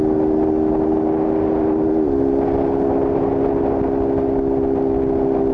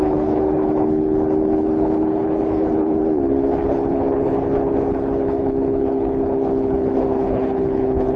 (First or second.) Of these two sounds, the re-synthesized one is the second